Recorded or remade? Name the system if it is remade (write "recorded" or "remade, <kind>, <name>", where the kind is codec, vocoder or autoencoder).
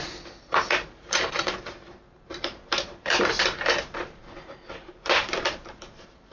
remade, vocoder, BigVGAN v2